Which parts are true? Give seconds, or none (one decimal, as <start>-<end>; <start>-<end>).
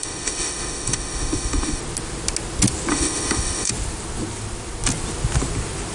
1.8-2.9; 3.7-5.9